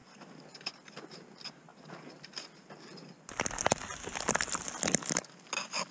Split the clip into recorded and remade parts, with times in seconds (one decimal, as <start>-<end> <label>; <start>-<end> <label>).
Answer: 0.0-5.9 recorded